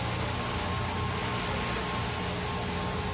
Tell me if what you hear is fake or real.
real